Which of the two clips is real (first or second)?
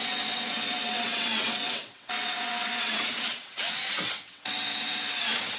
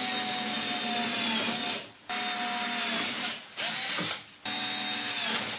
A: second